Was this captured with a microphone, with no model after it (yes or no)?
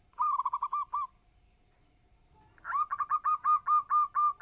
yes